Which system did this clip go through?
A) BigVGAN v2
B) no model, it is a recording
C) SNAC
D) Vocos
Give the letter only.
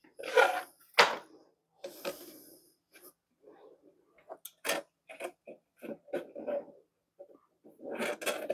B